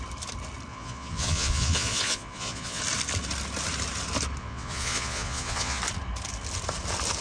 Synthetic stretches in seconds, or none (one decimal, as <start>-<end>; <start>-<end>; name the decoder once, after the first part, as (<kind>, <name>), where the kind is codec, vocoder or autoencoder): 0.7-2.8 (vocoder, Vocos); 4.4-5.8

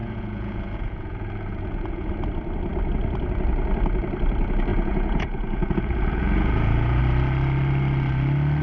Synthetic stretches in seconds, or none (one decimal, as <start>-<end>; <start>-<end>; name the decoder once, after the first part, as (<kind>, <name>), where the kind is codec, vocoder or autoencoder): 0.0-2.1 (vocoder, Vocos); 4.7-7.0

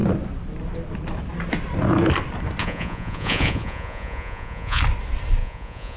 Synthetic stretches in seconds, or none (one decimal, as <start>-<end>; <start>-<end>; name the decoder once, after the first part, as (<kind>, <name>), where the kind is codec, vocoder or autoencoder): 2.6-4.8 (vocoder, Vocos); 5.4-6.0

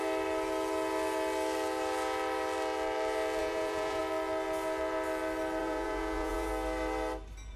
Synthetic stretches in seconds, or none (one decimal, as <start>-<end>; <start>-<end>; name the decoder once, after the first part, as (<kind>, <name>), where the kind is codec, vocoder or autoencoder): 3.4-4.0 (vocoder, Vocos); 5.6-6.5